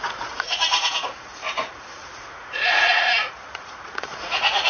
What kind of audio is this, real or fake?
fake